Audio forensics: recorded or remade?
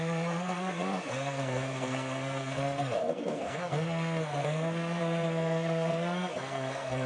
remade